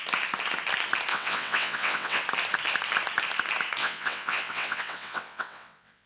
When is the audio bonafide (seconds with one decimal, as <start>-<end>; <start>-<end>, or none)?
0.0-1.1; 2.2-3.8